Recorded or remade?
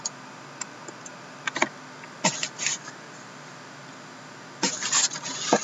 recorded